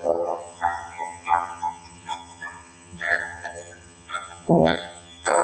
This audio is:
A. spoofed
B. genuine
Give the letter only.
A